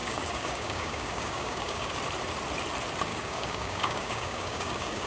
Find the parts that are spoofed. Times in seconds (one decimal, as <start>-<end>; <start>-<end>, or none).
0.0-1.9; 3.1-5.1